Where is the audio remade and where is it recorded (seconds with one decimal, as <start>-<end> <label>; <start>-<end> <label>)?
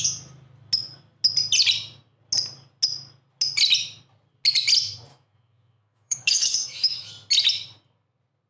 0.0-5.1 recorded; 5.1-7.1 remade; 7.1-8.5 recorded